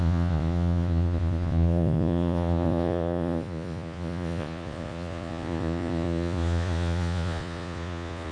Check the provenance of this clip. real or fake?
fake